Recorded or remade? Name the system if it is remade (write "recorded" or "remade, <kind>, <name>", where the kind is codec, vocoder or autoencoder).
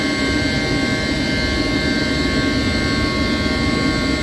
recorded